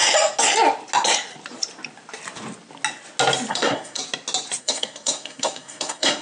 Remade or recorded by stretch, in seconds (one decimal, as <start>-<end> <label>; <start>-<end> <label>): 0.0-3.5 recorded; 3.5-4.0 remade; 4.0-4.6 recorded; 4.6-6.2 remade